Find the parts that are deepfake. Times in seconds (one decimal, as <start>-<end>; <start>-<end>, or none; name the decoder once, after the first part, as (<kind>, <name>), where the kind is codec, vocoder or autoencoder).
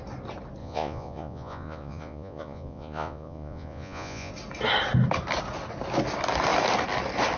0.6-4.3 (vocoder, Vocos)